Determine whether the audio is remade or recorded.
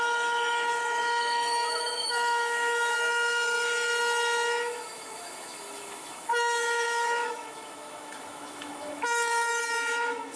remade